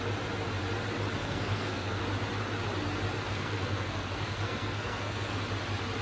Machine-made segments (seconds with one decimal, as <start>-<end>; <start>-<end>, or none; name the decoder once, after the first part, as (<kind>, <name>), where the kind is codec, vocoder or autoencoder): 1.2-2.0 (codec, SNAC); 3.3-5.4